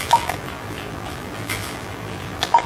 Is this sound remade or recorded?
remade